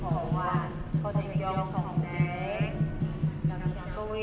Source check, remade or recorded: recorded